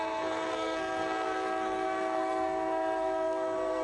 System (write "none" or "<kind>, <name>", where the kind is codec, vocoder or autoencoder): codec, SNAC